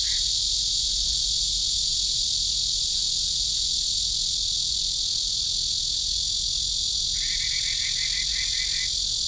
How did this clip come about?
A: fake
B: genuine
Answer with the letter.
B